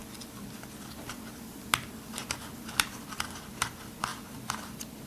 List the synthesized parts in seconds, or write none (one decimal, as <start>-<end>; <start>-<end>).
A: 2.2-3.0; 4.1-5.1